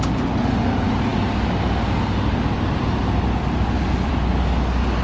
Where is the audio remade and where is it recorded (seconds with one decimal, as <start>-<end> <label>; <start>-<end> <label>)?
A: 0.0-5.0 recorded